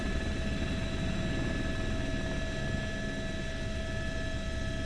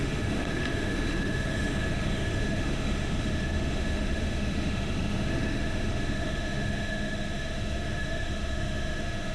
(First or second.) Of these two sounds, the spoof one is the second